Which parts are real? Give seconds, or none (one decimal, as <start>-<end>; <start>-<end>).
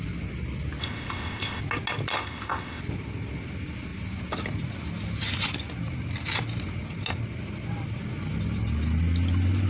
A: 0.0-0.8; 1.6-2.1; 2.8-9.7